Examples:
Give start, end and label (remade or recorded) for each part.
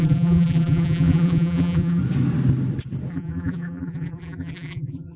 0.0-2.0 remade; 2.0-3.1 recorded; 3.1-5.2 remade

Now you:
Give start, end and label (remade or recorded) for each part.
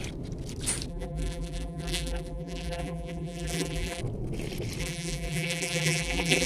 0.0-0.9 recorded; 0.9-4.0 remade; 4.0-4.8 recorded; 4.8-6.5 remade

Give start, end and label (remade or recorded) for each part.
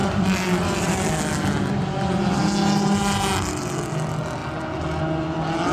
0.0-5.7 recorded